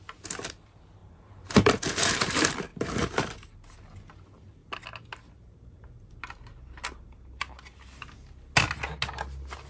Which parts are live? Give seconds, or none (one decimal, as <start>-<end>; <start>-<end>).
0.0-1.0; 2.4-9.7